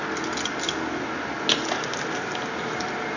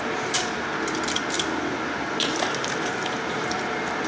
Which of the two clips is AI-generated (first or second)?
second